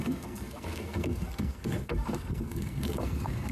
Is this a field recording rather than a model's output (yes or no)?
no